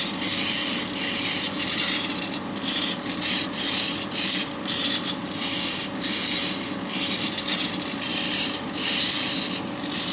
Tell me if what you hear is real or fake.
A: real